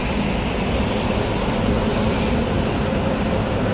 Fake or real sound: real